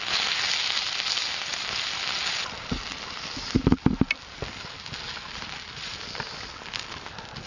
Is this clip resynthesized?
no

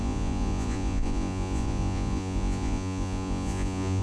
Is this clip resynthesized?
yes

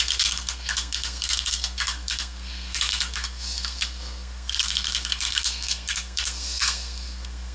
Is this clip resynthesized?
yes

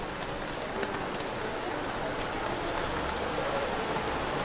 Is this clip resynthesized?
no